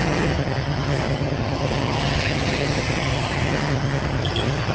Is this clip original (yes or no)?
no